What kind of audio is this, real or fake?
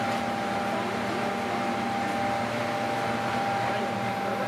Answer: real